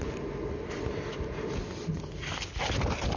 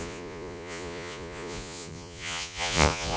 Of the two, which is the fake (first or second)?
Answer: second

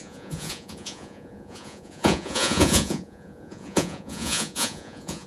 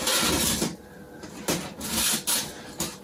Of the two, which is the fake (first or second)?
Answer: first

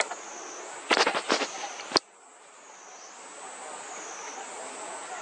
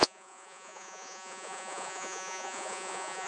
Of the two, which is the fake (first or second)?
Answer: second